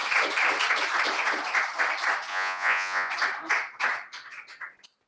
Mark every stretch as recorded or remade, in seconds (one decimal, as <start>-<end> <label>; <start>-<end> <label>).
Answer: 0.0-2.3 recorded; 2.3-3.1 remade; 3.1-5.1 recorded